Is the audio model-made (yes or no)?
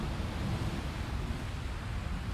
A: no